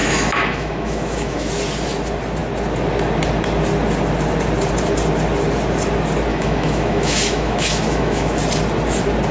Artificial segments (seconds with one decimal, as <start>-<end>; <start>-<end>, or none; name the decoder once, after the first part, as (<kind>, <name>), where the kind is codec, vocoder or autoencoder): 0.0-1.5 (autoencoder, DAC-VAE); 6.3-8.4